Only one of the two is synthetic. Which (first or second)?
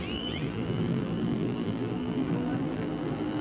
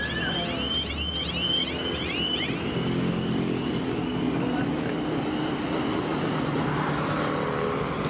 first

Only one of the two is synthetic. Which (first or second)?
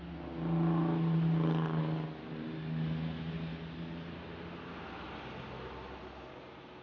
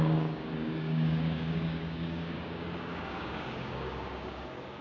second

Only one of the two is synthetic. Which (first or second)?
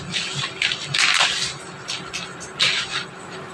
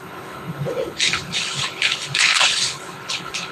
second